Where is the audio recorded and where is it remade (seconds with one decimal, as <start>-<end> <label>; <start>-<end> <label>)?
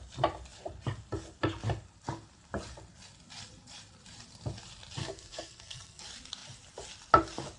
0.0-5.0 recorded; 5.0-6.0 remade; 6.0-7.6 recorded